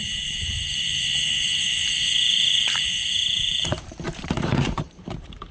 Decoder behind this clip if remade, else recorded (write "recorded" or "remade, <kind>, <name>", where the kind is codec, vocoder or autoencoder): remade, vocoder, BigVGAN v2